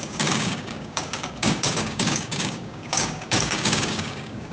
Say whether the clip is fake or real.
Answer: fake